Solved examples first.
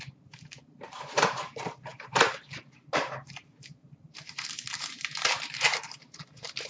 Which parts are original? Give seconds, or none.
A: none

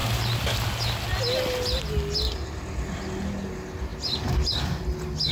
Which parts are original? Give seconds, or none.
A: 0.0-5.3